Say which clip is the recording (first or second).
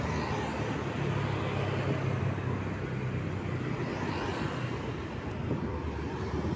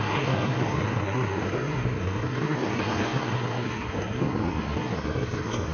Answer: first